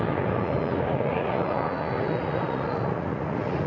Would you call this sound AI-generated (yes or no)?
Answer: yes